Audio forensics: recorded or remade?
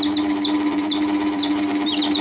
remade